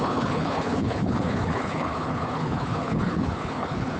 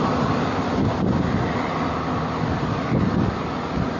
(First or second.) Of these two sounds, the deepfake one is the first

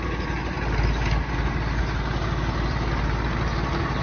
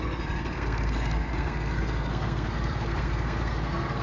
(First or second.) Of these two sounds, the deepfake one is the second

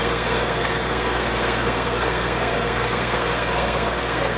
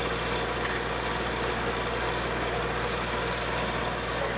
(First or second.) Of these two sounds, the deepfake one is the first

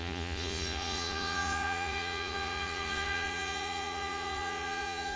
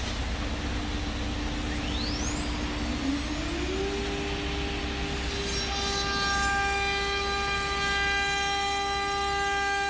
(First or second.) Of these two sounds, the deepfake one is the first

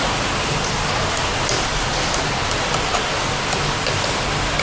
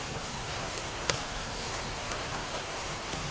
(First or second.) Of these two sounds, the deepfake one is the second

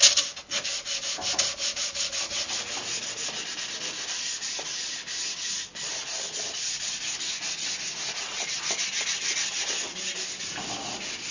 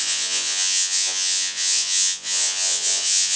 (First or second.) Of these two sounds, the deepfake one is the second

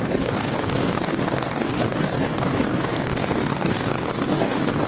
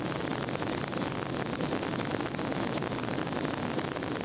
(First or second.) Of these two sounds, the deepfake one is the first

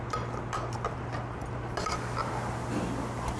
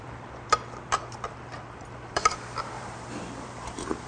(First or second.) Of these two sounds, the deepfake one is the second